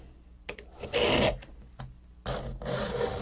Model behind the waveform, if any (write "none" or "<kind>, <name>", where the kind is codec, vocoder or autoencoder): none